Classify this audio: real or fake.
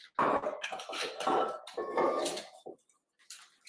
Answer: real